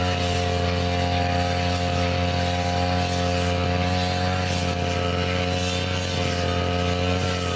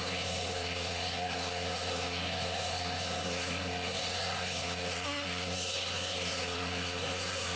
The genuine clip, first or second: first